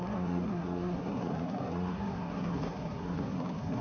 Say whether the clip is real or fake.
fake